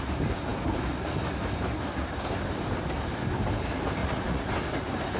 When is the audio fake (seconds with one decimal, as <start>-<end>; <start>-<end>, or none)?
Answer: 4.0-4.5

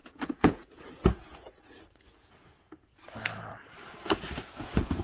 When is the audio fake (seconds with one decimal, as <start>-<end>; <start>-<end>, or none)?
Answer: 0.0-3.0; 4.0-5.0

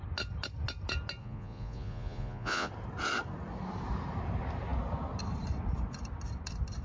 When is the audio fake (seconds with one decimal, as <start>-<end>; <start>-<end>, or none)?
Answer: 1.2-2.7

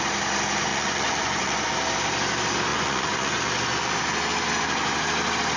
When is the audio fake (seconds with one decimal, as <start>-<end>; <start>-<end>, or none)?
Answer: 0.7-1.7; 2.7-3.4

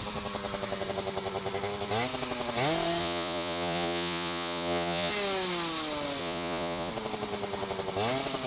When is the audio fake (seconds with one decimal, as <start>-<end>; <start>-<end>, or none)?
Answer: 3.0-5.1; 6.2-6.9

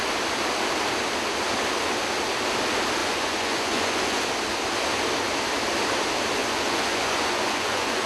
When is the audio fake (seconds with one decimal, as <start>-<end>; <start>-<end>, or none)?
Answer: 3.0-4.2; 6.4-8.1

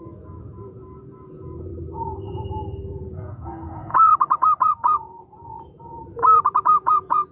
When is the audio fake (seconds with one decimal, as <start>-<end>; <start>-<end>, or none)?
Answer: 0.0-1.7; 2.3-4.1; 4.6-6.0; 6.6-7.3